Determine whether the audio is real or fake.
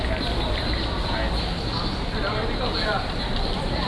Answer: real